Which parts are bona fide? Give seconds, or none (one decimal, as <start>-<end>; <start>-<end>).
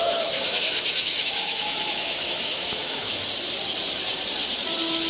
3.1-5.1